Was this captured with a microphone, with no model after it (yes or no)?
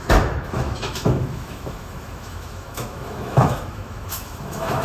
no